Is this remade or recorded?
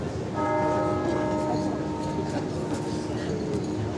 recorded